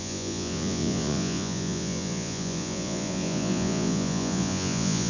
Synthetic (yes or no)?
yes